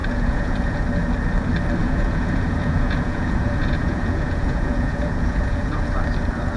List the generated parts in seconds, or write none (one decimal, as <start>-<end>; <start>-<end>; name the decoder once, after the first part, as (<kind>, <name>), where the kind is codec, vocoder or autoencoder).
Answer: 0.0-0.8 (vocoder, Vocos); 1.8-5.8